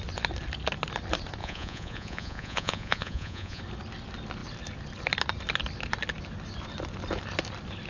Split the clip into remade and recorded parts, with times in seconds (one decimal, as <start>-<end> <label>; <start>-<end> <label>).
0.0-1.4 recorded; 1.4-3.6 remade; 3.6-7.9 recorded